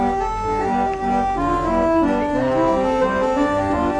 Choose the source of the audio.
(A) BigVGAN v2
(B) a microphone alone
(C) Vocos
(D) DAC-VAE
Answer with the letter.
B